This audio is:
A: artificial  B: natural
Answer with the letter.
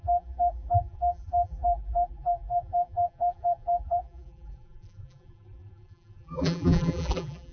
A